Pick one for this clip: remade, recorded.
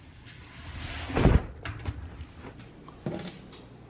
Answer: recorded